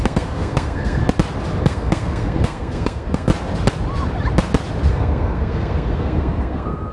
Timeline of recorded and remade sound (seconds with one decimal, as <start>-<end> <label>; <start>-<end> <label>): 0.0-1.0 remade; 1.0-1.6 recorded; 1.6-3.3 remade; 3.3-4.9 recorded; 4.9-6.9 remade